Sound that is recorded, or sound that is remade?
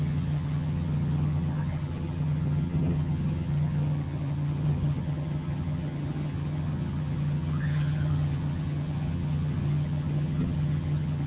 remade